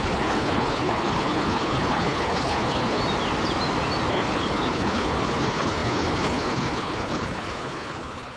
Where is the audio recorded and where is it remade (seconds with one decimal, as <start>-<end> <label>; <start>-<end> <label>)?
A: 0.0-3.0 remade; 3.0-4.1 recorded; 4.1-8.4 remade